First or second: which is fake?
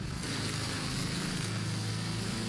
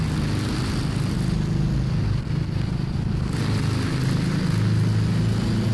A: first